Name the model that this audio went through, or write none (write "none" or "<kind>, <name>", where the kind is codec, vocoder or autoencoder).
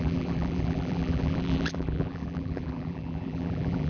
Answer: vocoder, BigVGAN v2